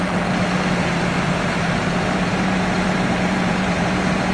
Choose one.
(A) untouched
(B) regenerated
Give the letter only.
B